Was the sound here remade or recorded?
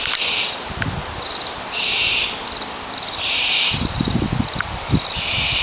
recorded